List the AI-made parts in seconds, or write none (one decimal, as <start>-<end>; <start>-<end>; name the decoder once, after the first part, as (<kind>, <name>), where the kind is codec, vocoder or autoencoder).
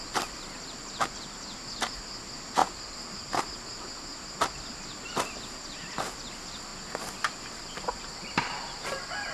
none